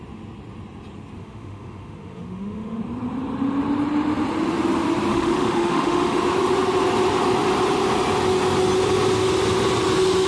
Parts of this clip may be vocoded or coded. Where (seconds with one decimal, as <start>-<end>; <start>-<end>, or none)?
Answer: 1.2-2.8; 5.1-6.2